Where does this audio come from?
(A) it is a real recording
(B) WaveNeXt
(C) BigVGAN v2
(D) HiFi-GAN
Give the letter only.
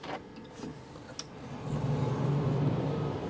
A